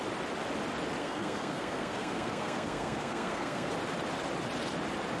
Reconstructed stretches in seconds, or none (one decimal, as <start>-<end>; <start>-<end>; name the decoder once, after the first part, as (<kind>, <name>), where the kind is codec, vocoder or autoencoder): 1.0-3.7 (codec, SNAC)